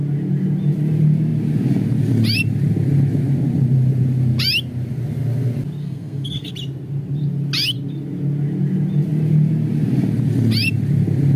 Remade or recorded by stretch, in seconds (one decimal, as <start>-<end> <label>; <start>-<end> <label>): 0.0-5.8 recorded; 5.8-6.5 remade; 6.5-11.4 recorded